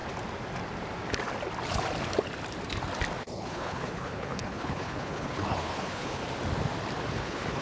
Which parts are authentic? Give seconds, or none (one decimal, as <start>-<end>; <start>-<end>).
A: 0.0-3.2; 6.2-7.1